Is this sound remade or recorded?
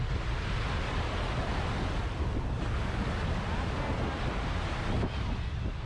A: recorded